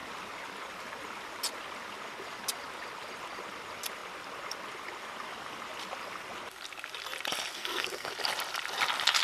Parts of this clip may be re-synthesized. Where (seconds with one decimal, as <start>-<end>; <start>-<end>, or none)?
7.5-8.1